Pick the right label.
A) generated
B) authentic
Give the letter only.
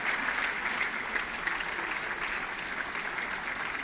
B